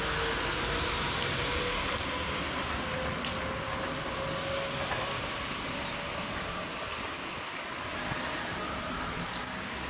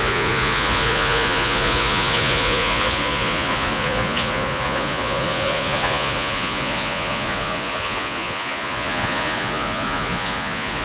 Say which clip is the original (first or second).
first